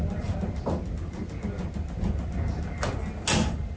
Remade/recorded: recorded